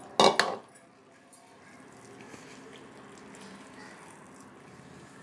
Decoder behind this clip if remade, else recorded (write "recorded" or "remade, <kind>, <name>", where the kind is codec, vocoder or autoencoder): recorded